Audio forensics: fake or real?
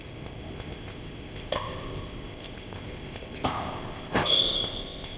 fake